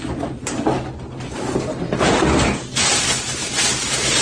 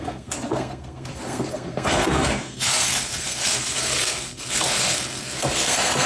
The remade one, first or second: second